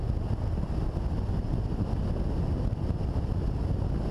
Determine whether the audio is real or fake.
real